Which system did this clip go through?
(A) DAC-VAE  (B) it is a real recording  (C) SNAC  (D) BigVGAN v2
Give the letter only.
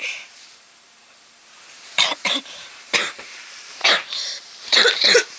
D